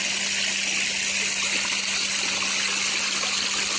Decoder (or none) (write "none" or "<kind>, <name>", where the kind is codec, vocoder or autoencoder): none